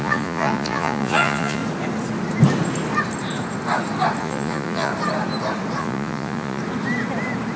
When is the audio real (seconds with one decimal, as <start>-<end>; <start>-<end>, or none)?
1.6-4.2; 4.9-5.8; 6.6-7.6